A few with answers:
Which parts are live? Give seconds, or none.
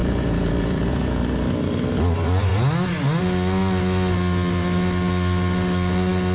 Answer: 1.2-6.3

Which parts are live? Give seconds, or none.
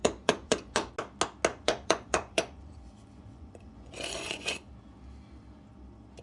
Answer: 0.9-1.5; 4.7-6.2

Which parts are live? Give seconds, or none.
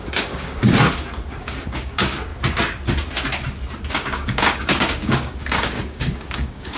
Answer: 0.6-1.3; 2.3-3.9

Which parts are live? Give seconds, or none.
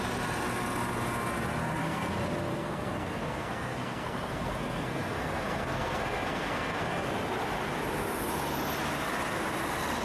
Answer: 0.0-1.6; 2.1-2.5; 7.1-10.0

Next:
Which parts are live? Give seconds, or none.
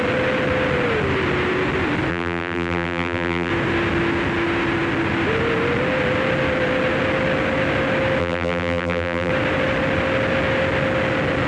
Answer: 0.0-2.1; 3.5-8.2; 9.3-11.5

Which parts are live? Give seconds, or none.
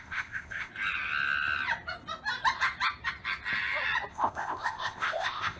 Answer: 0.7-4.1